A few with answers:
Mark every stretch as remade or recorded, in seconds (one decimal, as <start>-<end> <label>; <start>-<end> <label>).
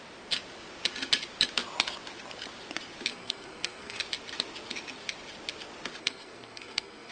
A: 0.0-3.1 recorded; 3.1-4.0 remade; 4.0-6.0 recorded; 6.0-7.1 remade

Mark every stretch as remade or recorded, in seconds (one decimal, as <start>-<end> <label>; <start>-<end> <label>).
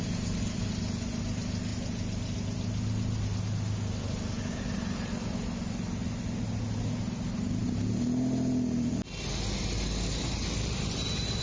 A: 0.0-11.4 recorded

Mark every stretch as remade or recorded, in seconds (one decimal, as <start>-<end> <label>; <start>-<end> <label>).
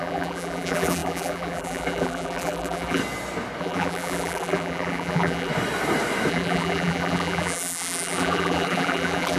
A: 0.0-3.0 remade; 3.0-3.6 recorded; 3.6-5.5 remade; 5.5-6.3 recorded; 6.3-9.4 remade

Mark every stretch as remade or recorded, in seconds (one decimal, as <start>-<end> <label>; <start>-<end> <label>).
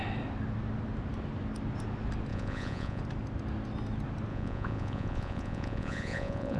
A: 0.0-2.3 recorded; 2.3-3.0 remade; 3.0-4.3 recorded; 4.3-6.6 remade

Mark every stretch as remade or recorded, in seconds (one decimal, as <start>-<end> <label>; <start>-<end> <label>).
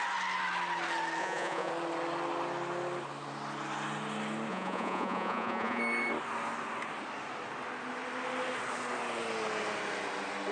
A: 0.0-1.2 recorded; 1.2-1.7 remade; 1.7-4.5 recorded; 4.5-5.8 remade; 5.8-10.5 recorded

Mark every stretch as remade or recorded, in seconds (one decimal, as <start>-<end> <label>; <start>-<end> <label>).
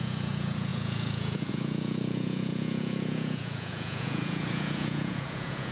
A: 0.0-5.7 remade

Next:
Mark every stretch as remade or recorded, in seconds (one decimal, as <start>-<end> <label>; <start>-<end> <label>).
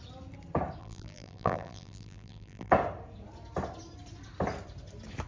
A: 0.0-0.8 recorded; 0.8-2.7 remade; 2.7-5.3 recorded